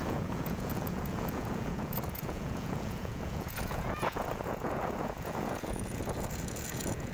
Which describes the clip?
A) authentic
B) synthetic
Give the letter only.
B